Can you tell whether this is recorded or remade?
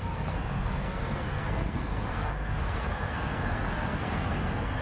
remade